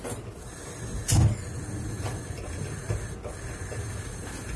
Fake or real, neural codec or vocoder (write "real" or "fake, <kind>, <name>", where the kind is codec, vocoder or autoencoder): real